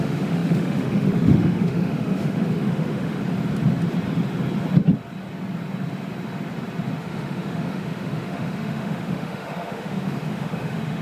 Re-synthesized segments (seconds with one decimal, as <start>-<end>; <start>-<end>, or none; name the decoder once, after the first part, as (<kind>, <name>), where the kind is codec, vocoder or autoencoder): 0.0-3.2 (autoencoder, DAC-VAE); 7.0-11.0